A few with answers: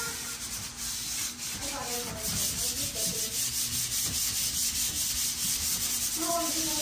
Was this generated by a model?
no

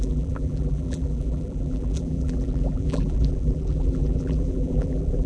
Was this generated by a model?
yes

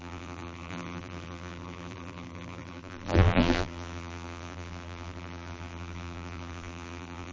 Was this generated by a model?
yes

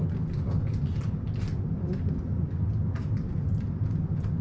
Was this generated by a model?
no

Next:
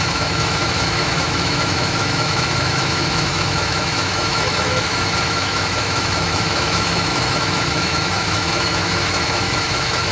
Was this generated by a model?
yes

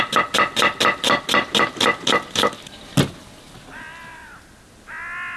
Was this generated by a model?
no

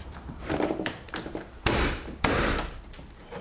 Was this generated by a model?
yes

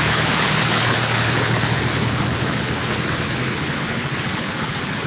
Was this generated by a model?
yes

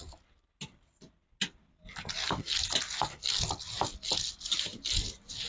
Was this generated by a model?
no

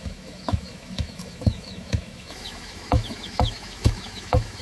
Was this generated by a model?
yes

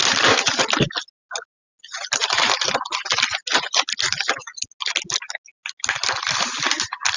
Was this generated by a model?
no